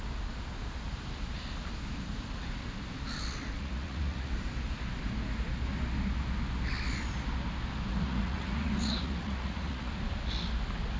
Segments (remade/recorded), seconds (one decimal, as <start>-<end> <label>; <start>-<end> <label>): 0.0-3.6 recorded; 3.6-4.3 remade; 4.3-7.9 recorded; 7.9-9.9 remade; 9.9-11.0 recorded